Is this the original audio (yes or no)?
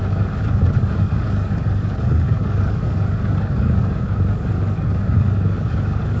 no